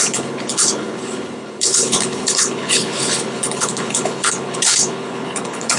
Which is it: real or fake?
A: fake